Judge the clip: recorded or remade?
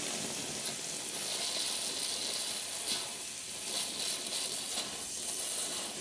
recorded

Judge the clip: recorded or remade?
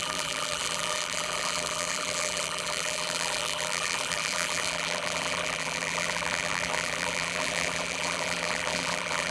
remade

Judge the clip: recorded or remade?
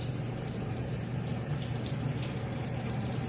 remade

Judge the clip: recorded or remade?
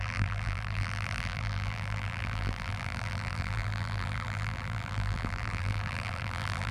remade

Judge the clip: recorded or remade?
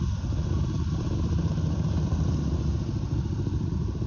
remade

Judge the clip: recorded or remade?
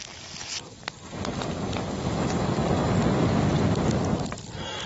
recorded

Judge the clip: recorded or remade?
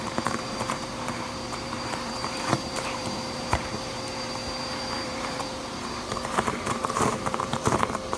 remade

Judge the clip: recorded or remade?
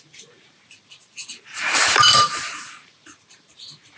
remade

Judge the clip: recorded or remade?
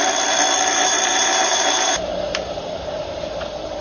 remade